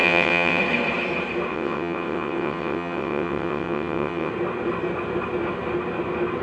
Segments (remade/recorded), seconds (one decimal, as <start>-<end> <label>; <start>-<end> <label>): 0.0-0.6 remade; 0.6-1.5 recorded; 1.5-4.3 remade; 4.3-6.4 recorded